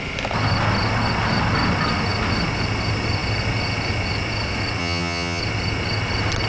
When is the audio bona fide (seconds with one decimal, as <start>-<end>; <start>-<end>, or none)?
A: 0.0-4.8; 5.4-6.5